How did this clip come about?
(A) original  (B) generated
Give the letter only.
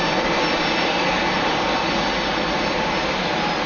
A